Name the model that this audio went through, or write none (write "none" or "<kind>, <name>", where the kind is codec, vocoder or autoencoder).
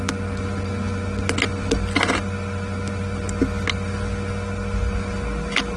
none